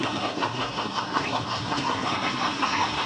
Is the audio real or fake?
fake